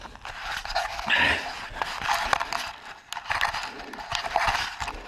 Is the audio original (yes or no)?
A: yes